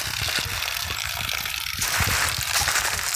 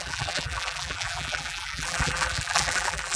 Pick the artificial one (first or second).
second